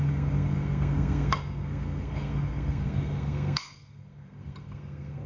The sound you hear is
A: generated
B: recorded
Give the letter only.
A